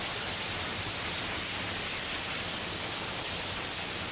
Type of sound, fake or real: real